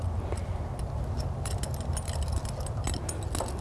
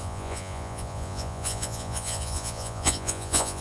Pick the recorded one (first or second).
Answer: first